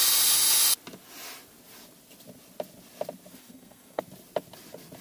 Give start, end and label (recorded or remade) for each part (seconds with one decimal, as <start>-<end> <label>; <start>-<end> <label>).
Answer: 0.0-3.4 recorded; 3.4-4.0 remade; 4.0-5.0 recorded